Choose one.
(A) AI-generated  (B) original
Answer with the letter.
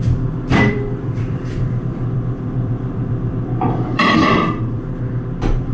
A